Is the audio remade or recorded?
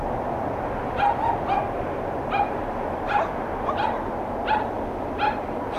recorded